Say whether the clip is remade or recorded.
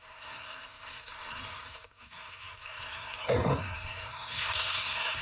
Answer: remade